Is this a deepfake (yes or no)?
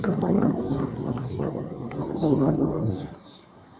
yes